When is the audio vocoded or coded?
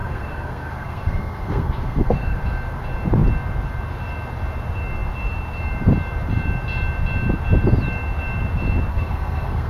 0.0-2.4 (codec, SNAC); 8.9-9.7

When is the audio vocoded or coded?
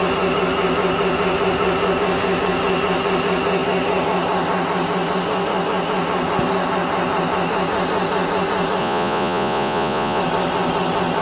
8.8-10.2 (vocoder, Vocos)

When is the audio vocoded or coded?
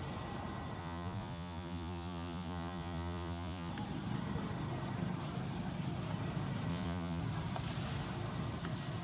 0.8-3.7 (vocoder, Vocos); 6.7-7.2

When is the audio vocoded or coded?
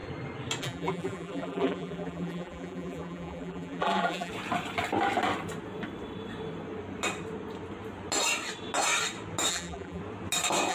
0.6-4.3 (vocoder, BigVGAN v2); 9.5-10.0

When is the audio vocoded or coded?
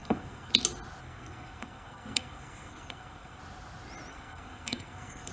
0.0-0.5 (codec, SNAC); 1.0-3.4; 4.1-5.3